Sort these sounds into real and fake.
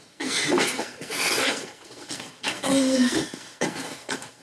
fake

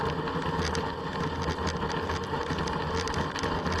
real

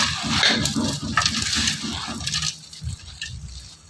real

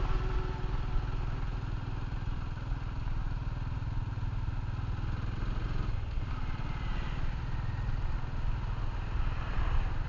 real